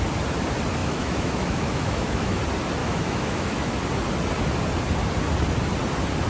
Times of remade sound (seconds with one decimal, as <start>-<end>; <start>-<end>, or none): 0.8-2.4; 2.8-3.8